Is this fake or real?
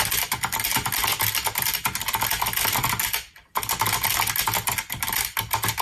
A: real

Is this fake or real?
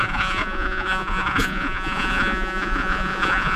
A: fake